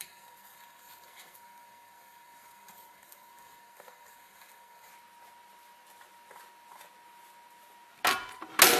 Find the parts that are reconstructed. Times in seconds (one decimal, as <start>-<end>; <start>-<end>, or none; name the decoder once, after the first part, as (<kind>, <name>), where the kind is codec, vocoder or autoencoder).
0.0-4.9 (codec, SNAC)

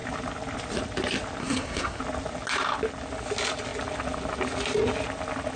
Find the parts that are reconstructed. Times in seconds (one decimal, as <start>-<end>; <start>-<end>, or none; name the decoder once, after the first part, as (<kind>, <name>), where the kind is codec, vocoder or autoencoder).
1.4-2.0 (codec, SNAC)

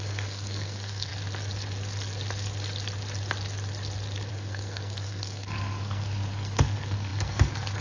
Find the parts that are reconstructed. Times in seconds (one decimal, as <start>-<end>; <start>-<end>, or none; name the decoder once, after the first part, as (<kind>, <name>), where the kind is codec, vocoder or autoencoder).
0.0-1.1 (codec, SNAC); 4.3-7.8

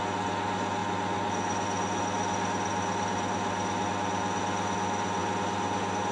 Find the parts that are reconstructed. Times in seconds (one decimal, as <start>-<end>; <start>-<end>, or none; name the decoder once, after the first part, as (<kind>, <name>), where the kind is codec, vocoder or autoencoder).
none

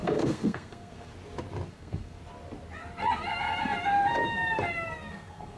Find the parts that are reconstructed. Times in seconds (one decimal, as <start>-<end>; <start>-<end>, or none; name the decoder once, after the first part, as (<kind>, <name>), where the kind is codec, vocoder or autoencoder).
0.0-1.1 (codec, SNAC); 1.7-2.2; 5.1-5.6